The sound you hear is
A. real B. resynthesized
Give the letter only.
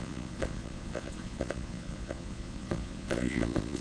B